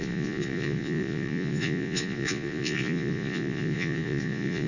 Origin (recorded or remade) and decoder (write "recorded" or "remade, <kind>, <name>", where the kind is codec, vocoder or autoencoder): remade, vocoder, Vocos